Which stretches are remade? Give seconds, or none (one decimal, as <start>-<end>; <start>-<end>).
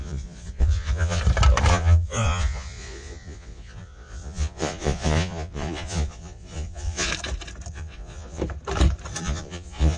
0.0-1.2; 1.7-7.1; 7.7-8.4; 9.2-10.0